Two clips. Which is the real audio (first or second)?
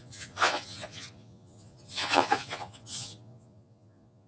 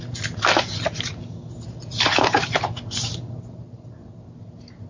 second